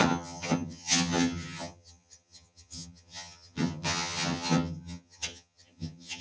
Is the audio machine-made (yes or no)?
yes